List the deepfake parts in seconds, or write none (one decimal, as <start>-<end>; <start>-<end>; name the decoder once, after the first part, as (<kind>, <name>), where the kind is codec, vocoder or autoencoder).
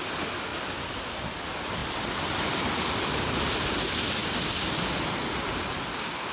none